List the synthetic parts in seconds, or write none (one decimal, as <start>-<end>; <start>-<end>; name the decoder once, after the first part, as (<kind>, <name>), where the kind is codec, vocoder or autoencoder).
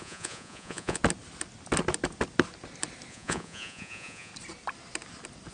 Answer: 0.0-1.0 (vocoder, Vocos); 3.1-4.3